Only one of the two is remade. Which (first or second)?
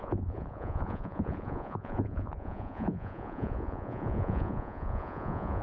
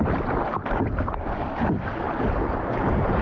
first